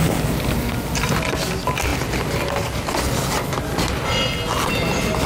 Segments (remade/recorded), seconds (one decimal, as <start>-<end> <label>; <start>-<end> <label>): 0.0-5.3 recorded